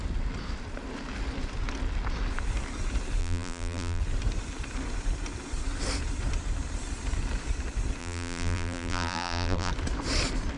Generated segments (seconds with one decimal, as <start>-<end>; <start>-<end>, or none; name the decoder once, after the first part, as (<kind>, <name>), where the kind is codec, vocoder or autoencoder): 3.2-4.0 (vocoder, BigVGAN v2); 8.0-9.7